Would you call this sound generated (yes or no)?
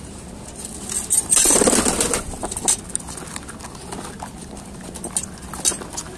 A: no